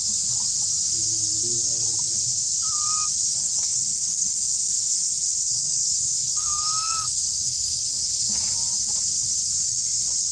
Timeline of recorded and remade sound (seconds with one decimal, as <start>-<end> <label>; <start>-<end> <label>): 0.0-3.3 recorded; 3.3-8.4 remade; 8.4-10.3 recorded